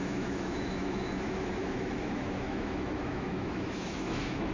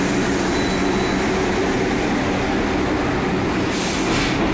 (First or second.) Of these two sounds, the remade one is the first